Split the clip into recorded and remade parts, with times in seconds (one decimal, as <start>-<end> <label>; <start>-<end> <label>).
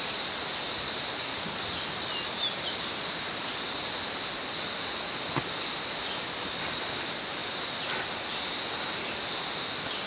0.0-10.1 recorded